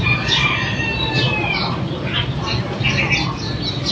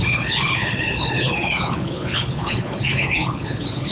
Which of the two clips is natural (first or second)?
first